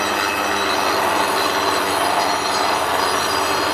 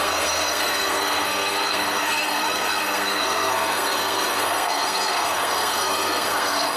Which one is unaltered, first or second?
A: first